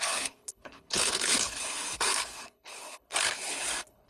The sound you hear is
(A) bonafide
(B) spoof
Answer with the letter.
B